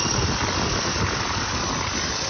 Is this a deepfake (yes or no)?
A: no